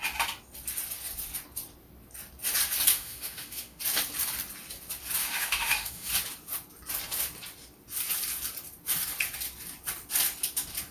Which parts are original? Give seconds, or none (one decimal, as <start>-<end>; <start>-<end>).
0.0-2.9; 3.8-5.2; 6.1-10.9